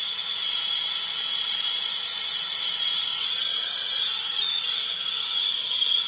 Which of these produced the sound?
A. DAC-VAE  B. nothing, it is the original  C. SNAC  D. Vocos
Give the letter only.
D